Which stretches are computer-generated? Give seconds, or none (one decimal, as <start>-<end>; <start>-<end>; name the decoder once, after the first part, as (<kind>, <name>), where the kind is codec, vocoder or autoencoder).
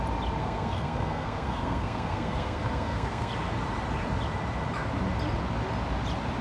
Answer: 0.4-3.3 (codec, SNAC)